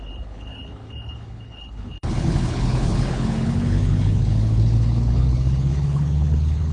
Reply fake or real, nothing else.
fake